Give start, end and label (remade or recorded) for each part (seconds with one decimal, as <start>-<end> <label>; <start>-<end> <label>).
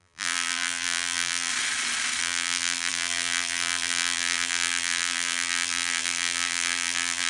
0.0-1.5 remade; 1.5-2.2 recorded; 2.2-7.3 remade